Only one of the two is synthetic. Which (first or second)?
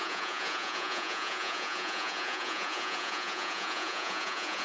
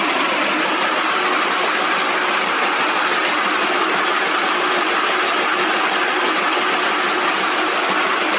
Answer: first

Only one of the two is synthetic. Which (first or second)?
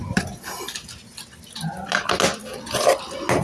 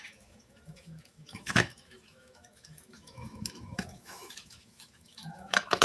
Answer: second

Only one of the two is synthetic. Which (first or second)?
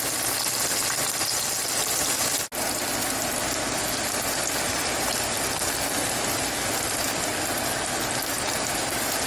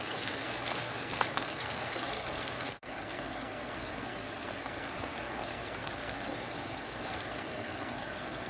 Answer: second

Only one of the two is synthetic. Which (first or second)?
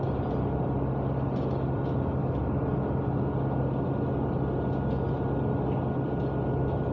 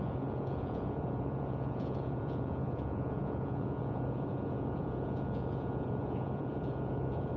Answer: second